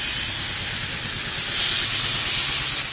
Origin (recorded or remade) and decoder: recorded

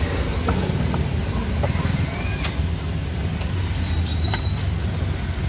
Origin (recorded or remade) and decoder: recorded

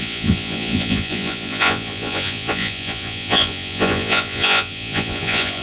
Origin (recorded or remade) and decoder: remade, vocoder, Vocos